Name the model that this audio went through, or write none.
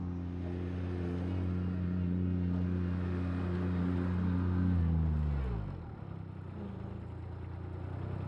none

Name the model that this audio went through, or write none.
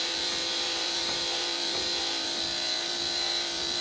vocoder, BigVGAN v2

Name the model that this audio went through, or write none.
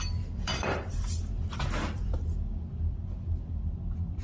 vocoder, BigVGAN v2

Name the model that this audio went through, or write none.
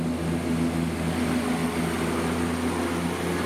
none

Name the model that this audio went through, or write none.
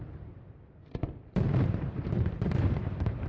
vocoder, BigVGAN v2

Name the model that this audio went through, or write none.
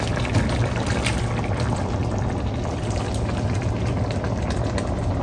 none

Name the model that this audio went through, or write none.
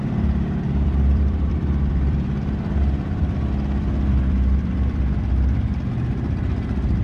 vocoder, BigVGAN v2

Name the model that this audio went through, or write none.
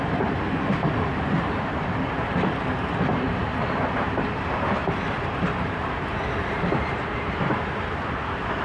vocoder, BigVGAN v2